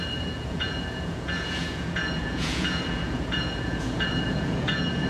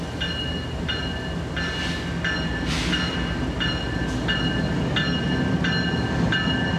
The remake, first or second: first